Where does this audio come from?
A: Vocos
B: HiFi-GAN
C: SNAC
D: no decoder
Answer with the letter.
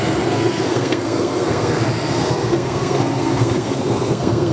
C